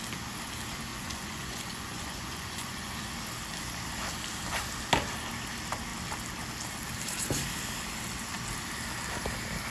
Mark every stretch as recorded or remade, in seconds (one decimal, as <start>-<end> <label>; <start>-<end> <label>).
0.0-0.9 recorded; 0.9-2.9 remade; 2.9-9.7 recorded